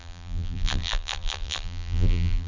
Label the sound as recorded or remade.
remade